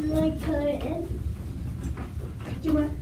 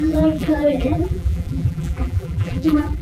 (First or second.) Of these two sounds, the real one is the first